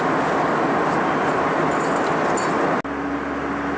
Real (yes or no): yes